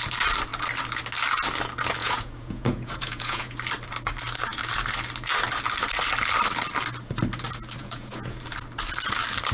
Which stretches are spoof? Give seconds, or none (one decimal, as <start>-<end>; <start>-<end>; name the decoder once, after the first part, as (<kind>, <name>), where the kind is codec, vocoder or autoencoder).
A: 2.0-3.5 (vocoder, Vocos); 7.8-8.4